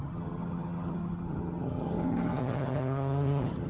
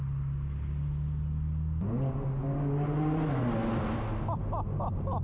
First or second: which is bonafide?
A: second